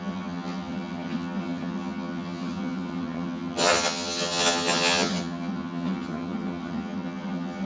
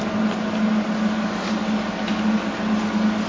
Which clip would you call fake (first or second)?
first